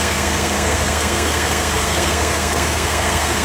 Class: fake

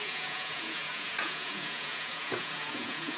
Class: fake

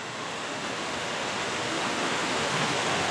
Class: fake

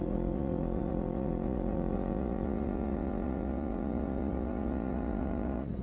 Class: fake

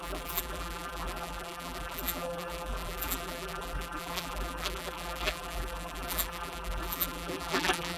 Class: fake